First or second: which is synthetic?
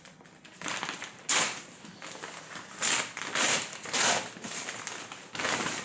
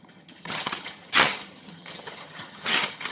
second